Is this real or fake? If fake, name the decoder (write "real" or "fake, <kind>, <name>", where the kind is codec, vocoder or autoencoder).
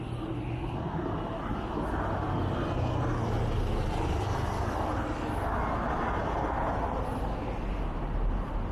real